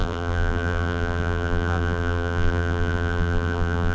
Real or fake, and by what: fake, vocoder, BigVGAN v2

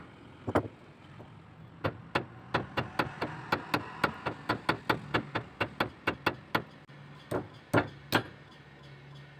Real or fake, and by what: real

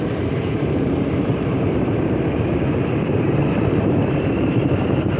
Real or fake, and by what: fake, vocoder, BigVGAN v2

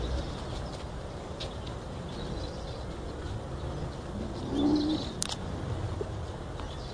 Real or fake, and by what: real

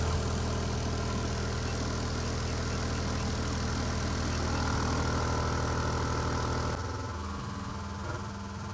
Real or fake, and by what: real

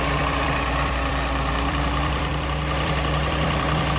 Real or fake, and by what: fake, vocoder, BigVGAN v2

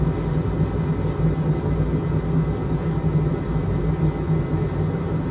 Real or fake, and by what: real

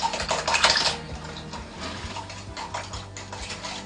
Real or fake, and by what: real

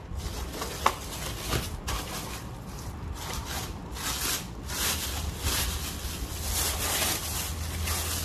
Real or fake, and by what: real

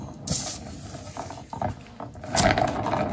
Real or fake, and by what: real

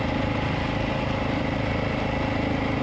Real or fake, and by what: real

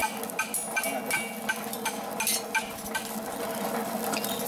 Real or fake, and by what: real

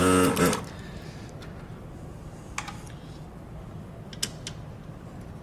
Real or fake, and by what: real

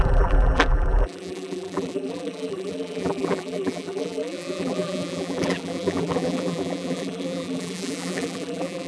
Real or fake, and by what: fake, vocoder, BigVGAN v2